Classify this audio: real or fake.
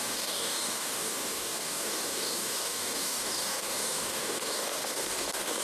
fake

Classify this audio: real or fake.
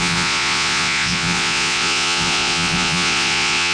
fake